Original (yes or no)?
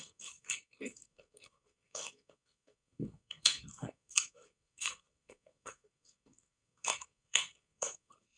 no